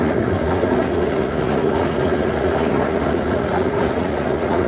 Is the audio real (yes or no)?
no